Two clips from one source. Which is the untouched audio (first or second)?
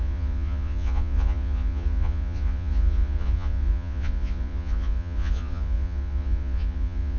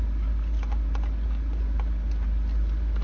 second